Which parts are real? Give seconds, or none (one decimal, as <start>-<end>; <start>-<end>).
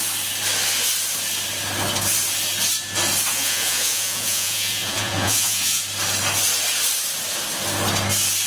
0.0-3.3; 5.8-8.5